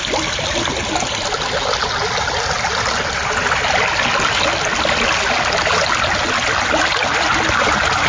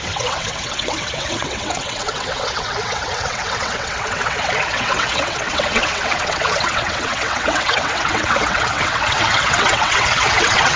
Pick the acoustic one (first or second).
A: first